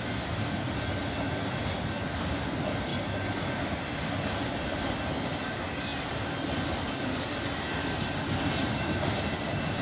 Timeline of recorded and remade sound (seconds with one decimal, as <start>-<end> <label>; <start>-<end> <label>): 0.0-8.6 recorded; 8.6-9.8 remade